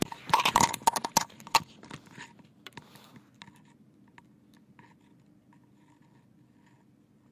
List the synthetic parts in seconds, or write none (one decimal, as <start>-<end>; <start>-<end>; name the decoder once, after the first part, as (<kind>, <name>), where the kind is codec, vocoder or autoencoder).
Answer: none